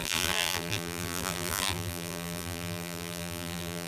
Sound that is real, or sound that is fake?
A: fake